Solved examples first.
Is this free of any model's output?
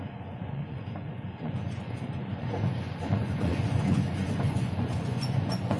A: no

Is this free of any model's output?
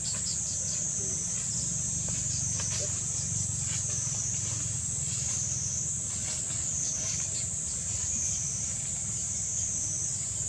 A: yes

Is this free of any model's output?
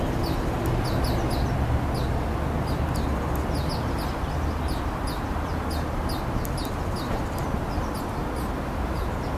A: yes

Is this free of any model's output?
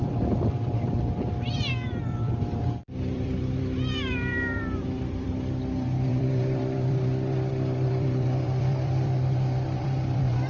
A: no